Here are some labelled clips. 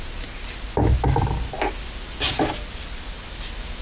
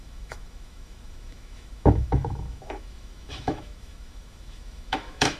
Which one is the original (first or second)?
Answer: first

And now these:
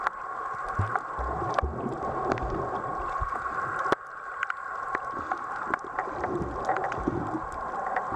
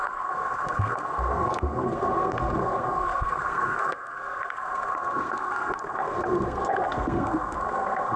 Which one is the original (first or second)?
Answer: first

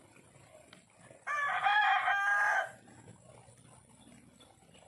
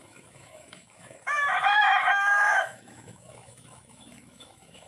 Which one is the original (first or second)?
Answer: first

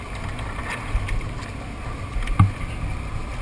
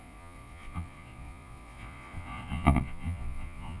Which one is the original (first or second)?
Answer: first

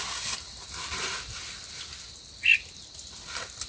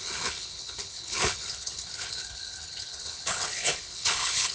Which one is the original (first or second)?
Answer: first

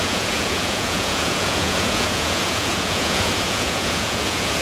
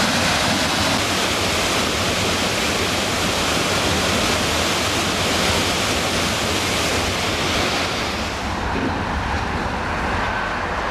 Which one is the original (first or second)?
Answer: second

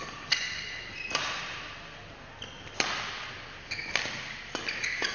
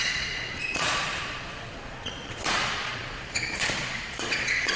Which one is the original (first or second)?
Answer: first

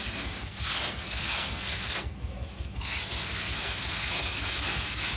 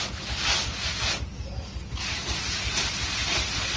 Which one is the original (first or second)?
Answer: second